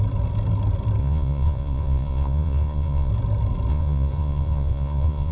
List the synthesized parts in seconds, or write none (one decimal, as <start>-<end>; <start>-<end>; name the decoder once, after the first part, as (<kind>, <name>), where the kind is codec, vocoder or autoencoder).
1.0-3.1 (vocoder, Vocos); 3.7-5.3

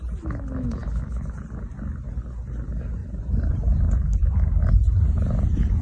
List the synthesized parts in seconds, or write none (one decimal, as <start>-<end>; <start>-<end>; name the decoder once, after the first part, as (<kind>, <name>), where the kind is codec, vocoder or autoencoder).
3.0-4.3 (vocoder, BigVGAN v2)